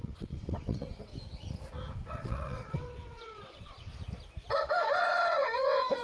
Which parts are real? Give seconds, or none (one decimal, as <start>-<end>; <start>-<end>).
1.1-1.9; 3.9-4.6